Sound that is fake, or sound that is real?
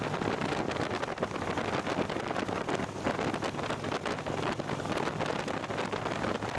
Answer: real